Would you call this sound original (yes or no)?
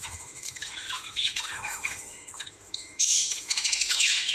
no